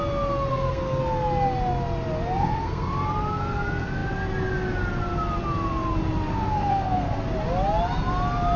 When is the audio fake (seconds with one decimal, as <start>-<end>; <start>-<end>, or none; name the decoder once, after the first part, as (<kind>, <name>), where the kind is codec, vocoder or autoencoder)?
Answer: 0.5-1.0 (codec, SNAC); 2.4-2.9; 6.3-7.2